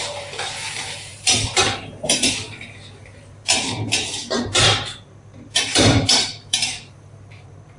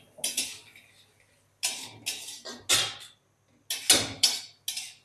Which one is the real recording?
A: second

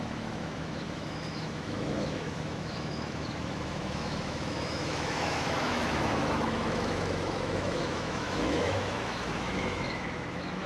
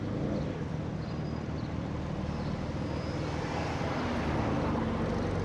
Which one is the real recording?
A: second